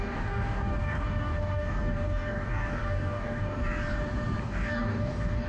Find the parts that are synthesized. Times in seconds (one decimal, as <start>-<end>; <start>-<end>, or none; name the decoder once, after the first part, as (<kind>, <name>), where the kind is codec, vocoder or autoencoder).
0.0-3.6 (codec, DAC); 4.4-5.5